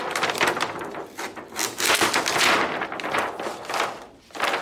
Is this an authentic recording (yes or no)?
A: yes